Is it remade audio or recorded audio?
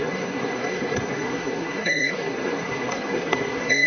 remade